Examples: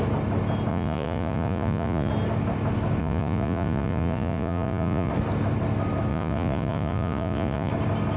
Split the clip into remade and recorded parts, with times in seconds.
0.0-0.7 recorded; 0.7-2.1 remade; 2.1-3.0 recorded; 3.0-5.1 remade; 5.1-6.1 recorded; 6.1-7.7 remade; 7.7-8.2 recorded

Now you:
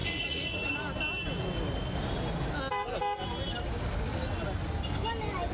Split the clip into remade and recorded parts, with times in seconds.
0.0-0.7 remade; 0.7-5.5 recorded

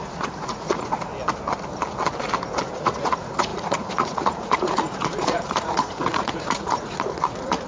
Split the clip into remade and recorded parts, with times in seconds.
0.0-1.1 remade; 1.1-2.7 recorded; 2.7-7.7 remade

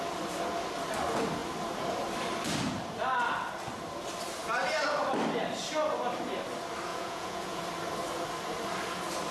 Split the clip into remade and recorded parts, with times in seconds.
0.0-6.9 recorded; 6.9-7.6 remade; 7.6-9.3 recorded

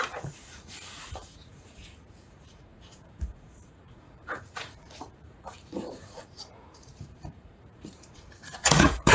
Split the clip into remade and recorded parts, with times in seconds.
0.0-9.1 remade